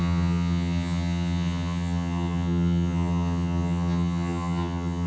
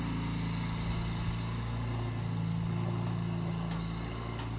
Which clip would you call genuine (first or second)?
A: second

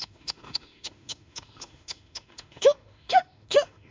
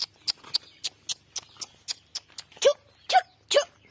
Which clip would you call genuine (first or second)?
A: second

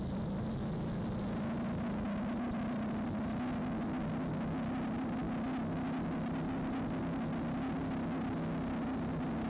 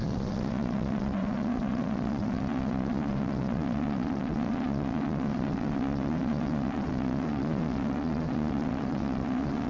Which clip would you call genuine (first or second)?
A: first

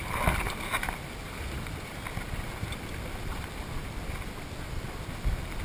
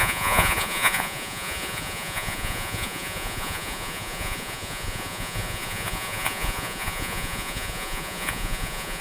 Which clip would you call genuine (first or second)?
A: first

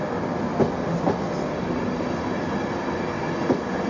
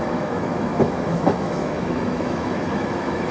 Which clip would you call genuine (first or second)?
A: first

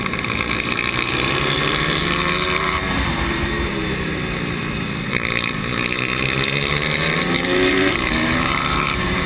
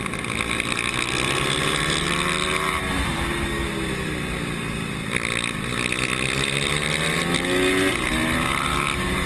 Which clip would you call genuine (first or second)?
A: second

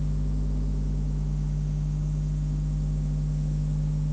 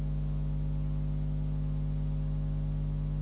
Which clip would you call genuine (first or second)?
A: second